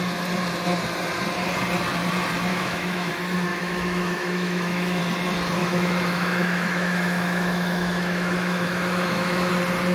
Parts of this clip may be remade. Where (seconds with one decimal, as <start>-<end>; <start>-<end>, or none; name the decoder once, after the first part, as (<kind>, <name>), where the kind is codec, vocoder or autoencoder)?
2.5-3.1 (autoencoder, DAC-VAE); 3.5-5.0; 5.6-9.5